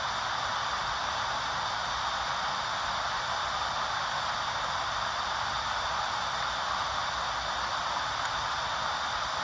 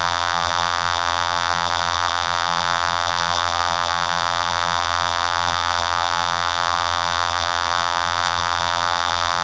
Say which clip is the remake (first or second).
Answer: second